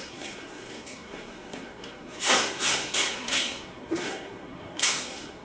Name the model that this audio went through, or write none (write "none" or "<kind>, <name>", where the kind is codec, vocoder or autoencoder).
codec, SNAC